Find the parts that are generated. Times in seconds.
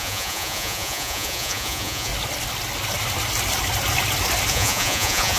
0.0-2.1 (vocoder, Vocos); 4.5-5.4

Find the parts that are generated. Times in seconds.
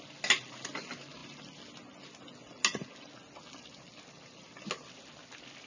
none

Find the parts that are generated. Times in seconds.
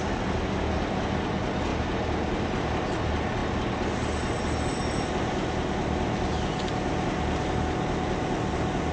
none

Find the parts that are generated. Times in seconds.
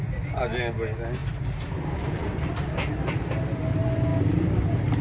1.2-3.2 (vocoder, BigVGAN v2); 4.1-4.6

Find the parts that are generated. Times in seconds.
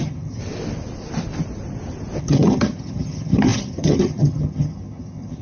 0.0-0.4 (vocoder, HiFi-GAN); 2.2-5.4